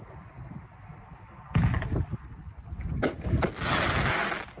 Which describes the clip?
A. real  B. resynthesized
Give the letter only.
A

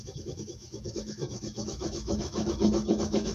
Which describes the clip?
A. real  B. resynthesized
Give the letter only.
B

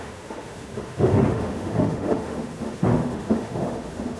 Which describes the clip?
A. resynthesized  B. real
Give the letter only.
A